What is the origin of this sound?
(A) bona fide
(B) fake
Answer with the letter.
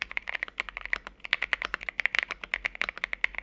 A